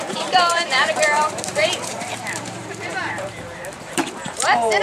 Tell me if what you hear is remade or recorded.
remade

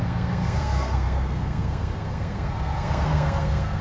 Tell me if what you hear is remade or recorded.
remade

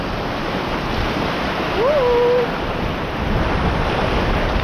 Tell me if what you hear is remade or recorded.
recorded